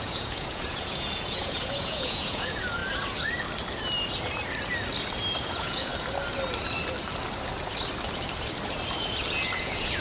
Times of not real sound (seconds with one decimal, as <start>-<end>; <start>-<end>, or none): 0.0-2.8; 5.4-5.9; 9.6-10.0